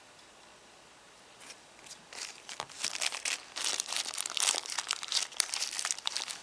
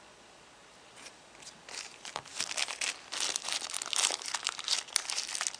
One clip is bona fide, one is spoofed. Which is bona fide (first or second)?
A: second